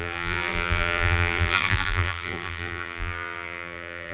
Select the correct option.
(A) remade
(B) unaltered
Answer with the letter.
A